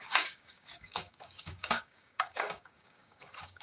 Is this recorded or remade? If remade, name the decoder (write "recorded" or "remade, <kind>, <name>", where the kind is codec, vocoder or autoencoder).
remade, codec, DAC